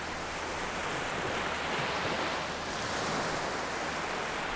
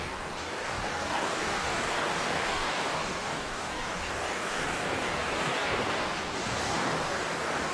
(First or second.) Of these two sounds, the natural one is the first